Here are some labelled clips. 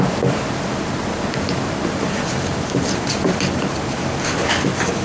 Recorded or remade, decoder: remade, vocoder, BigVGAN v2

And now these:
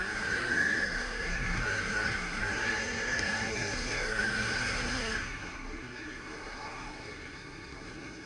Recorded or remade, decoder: remade, codec, SNAC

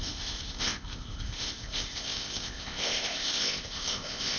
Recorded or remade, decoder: remade, codec, ZipCodec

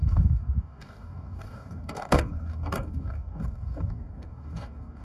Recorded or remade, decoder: remade, codec, DAC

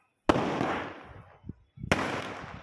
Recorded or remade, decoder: recorded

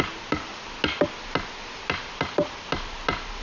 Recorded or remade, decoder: recorded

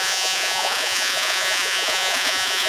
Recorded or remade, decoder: remade, vocoder, Vocos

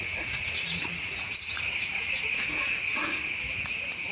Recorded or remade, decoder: remade, vocoder, Vocos